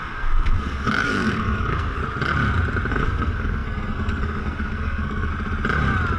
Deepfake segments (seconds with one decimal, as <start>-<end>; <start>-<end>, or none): 0.0-2.0; 2.9-5.3